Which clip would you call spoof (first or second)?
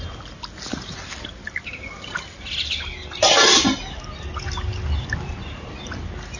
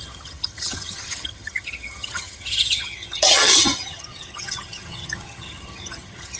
second